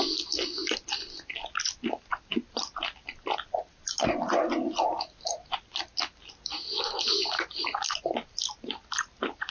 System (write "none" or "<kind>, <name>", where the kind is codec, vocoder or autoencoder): none